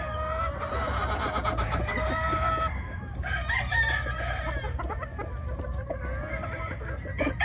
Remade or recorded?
recorded